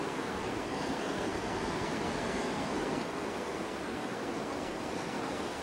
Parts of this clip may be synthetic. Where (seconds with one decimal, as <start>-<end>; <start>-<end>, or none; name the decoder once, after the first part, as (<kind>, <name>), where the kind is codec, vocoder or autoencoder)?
0.0-5.6 (codec, SNAC)